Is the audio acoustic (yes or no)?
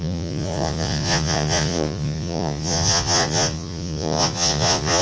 no